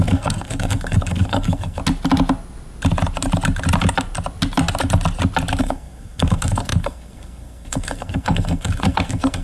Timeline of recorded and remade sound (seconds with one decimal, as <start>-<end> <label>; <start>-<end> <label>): 0.0-1.8 remade; 1.8-5.6 recorded; 5.6-9.4 remade